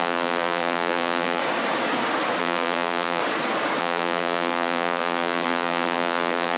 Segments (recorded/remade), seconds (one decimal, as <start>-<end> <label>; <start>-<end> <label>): 0.0-1.4 remade; 1.4-2.4 recorded; 2.4-3.2 remade; 3.2-3.8 recorded; 3.8-6.6 remade